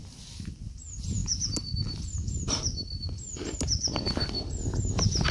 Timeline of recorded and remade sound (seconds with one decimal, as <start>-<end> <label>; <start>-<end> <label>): 0.0-5.3 recorded